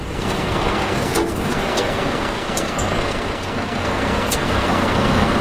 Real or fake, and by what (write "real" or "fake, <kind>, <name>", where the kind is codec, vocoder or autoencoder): fake, codec, SNAC